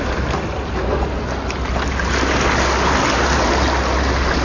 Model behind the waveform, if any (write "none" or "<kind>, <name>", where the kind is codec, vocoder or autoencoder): none